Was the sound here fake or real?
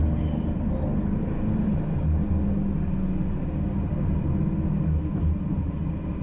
real